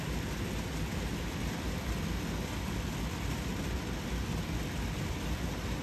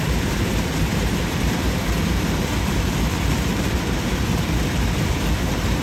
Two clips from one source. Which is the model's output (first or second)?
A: second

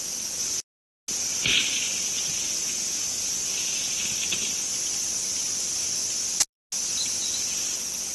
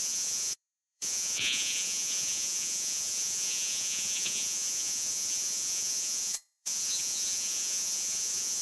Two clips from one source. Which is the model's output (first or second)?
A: second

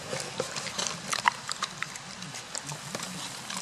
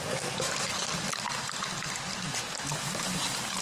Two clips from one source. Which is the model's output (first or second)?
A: first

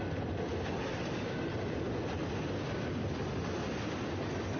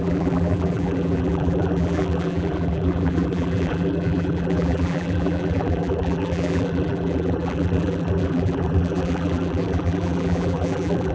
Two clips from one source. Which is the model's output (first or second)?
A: second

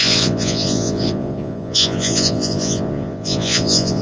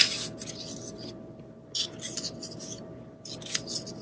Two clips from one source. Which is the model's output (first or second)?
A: first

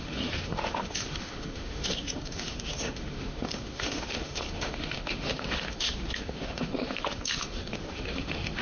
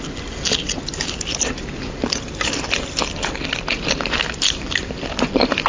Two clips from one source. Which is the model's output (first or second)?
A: first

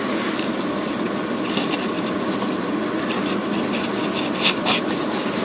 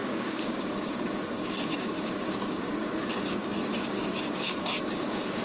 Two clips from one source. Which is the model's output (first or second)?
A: second